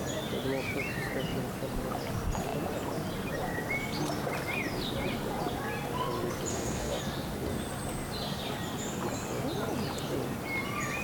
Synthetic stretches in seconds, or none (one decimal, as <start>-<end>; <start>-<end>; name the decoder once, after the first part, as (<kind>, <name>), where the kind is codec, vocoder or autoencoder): 6.5-7.0 (codec, DAC)

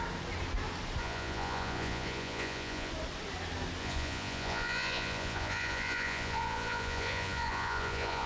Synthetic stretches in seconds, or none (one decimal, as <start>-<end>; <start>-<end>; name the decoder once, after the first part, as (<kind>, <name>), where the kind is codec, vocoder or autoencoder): 1.0-2.9 (vocoder, Vocos); 3.8-8.3

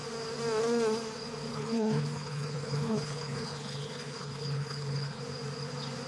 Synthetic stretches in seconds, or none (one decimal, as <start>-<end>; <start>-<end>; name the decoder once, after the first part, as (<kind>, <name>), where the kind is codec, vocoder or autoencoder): 1.5-5.2 (codec, HILCodec)

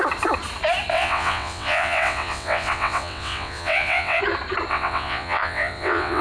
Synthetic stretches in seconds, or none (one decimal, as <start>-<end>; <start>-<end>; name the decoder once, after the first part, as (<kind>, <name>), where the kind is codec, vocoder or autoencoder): 0.9-4.2 (vocoder, WaveNeXt); 4.7-6.2

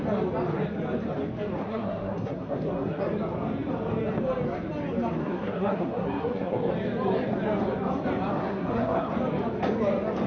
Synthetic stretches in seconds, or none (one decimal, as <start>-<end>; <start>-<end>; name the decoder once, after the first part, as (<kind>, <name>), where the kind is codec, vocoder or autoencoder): 1.6-3.0 (codec, SNAC); 5.2-6.7; 8.4-9.1

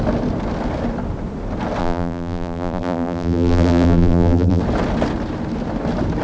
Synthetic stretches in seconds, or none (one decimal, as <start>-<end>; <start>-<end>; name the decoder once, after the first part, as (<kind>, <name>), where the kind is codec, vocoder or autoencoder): 1.8-4.6 (vocoder, BigVGAN v2)

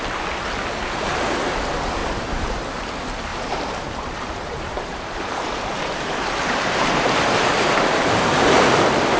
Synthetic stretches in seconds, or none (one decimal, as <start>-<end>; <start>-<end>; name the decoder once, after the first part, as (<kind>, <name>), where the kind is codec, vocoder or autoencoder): 2.0-2.6 (vocoder, BigVGAN v2); 3.3-8.5